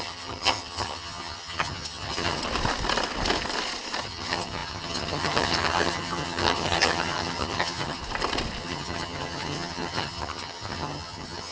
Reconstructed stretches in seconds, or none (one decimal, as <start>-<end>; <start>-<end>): 0.0-2.4; 4.0-8.0; 8.6-11.5